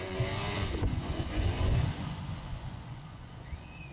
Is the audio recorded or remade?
remade